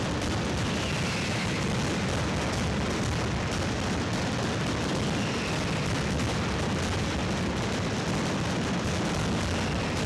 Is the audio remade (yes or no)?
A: no